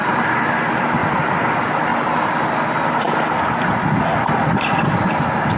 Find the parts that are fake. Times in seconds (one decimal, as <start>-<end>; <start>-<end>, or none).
1.0-1.5